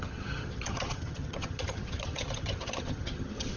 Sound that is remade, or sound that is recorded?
remade